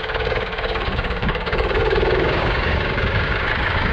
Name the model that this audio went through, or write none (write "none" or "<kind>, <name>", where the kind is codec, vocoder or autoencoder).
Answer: codec, DAC